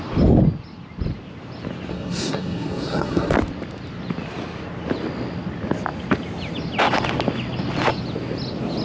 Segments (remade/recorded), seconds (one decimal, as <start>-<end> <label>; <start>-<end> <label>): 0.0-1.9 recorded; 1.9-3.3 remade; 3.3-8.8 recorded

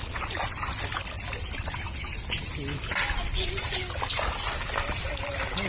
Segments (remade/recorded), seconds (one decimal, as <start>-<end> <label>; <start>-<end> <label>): 0.0-5.7 recorded

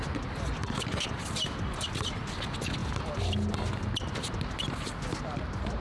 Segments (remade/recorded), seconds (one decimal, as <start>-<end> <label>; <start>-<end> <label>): 0.0-5.8 recorded

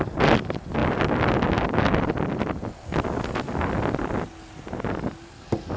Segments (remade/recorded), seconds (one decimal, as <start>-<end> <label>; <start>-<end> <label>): 0.0-5.8 recorded

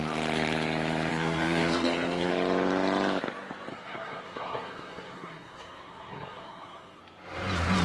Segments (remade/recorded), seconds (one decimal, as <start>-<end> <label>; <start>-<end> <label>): 0.0-1.1 recorded; 1.1-2.3 remade; 2.3-3.7 recorded; 3.7-7.0 remade; 7.0-7.8 recorded